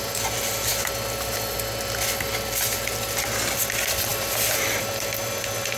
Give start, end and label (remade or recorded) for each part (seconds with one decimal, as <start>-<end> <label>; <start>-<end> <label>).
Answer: 0.0-4.1 recorded; 4.1-4.9 remade; 4.9-5.8 recorded